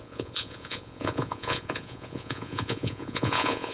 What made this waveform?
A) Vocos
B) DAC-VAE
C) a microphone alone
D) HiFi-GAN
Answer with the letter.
A